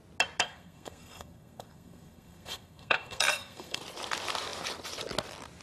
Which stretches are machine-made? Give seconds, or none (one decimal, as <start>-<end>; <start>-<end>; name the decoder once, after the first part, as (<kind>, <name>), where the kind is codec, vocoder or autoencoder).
0.4-3.8 (codec, SNAC)